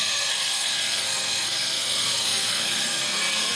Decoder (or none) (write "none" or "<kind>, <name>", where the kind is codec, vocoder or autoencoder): codec, SNAC